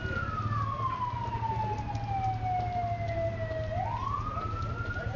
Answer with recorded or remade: recorded